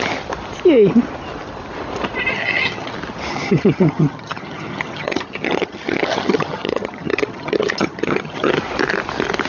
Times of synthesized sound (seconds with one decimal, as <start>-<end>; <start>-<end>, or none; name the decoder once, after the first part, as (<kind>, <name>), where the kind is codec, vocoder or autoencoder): 2.3-2.9 (vocoder, HiFi-GAN); 3.3-8.5